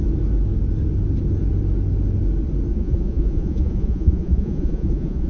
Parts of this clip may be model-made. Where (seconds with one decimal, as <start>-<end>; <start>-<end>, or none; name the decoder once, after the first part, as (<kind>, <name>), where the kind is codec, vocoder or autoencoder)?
2.7-5.3 (vocoder, Vocos)